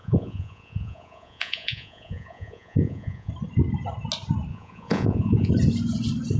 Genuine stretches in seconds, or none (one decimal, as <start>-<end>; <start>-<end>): 3.3-4.5; 5.5-6.4